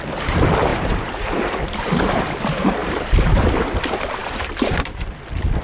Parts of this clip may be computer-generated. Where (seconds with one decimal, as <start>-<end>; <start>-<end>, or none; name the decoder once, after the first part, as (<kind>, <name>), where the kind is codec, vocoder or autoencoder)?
0.7-1.6 (vocoder, BigVGAN v2); 2.8-3.4; 4.2-5.1